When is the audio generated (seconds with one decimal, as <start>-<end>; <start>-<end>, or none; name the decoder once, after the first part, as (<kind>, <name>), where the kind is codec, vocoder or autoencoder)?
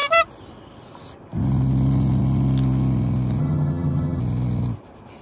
3.4-4.2 (vocoder, HiFi-GAN)